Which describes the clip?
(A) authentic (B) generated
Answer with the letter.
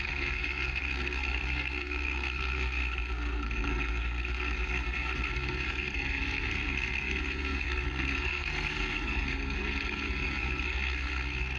B